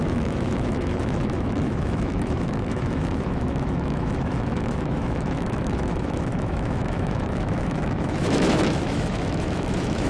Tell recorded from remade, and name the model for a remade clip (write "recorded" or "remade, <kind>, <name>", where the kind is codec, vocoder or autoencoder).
remade, autoencoder, DAC-VAE